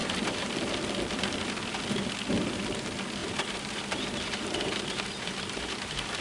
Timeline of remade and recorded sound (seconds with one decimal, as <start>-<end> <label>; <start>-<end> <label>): 0.0-0.5 remade; 0.5-3.2 recorded; 3.2-6.2 remade